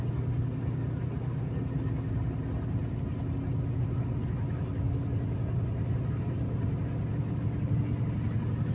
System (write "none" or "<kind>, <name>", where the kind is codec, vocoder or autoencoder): none